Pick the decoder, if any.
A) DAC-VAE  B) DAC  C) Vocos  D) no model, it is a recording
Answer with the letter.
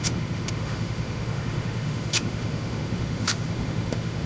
A